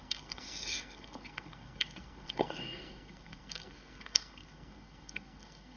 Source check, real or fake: fake